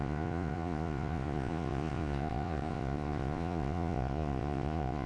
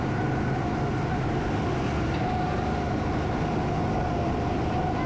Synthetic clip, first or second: first